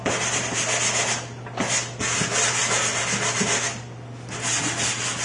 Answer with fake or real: real